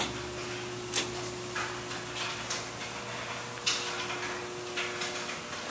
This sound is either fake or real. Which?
real